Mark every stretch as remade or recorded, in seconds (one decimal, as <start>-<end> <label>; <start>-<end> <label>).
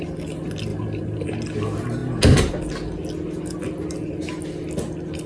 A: 0.0-0.7 recorded; 0.7-1.3 remade; 1.3-5.3 recorded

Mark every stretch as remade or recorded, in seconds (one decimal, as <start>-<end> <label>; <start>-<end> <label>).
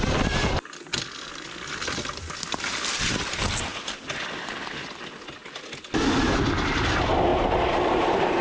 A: 0.0-7.3 recorded; 7.3-8.4 remade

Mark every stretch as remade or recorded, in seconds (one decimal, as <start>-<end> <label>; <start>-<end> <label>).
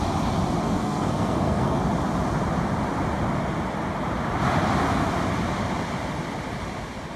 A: 0.0-0.6 recorded; 0.6-1.8 remade; 1.8-7.2 recorded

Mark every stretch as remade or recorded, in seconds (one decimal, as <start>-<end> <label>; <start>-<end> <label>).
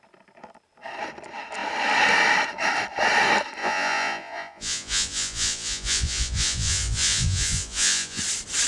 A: 0.0-3.6 recorded; 3.6-8.2 remade; 8.2-8.7 recorded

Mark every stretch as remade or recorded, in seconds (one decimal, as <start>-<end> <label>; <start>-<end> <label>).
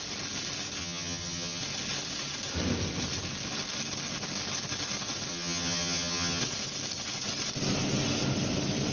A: 0.0-0.8 recorded; 0.8-1.6 remade; 1.6-5.3 recorded; 5.3-6.4 remade; 6.4-8.9 recorded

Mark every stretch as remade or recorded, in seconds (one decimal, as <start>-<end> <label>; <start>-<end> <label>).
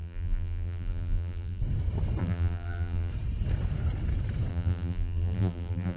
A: 0.0-1.6 remade; 1.6-2.2 recorded; 2.2-3.1 remade; 3.1-4.5 recorded; 4.5-6.0 remade